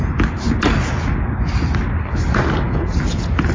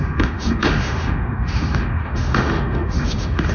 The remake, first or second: second